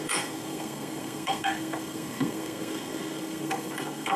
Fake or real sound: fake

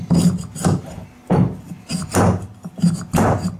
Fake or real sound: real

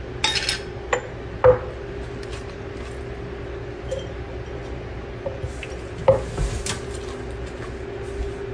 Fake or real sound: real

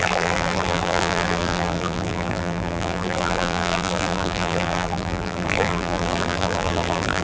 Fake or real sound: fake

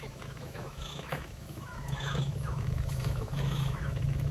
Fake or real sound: fake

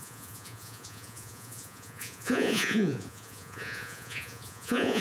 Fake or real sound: fake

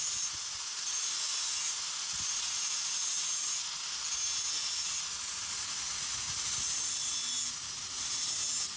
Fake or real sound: real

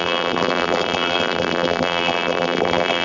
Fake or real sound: fake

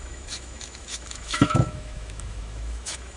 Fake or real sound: fake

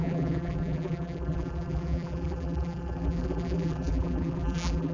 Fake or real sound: fake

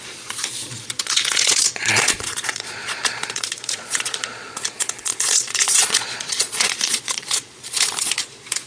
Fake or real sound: fake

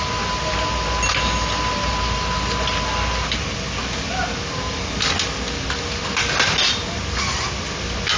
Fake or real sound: real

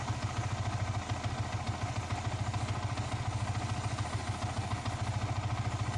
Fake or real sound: real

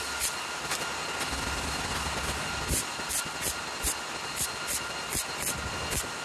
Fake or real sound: real